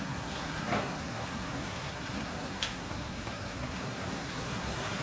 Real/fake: fake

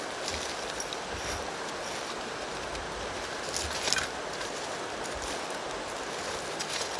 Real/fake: real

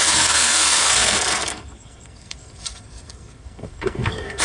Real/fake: fake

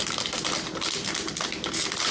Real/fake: real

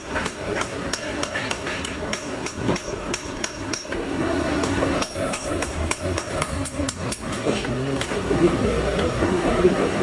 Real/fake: fake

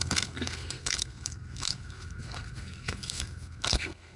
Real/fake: fake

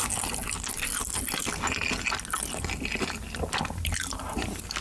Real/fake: real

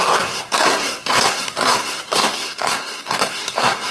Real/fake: fake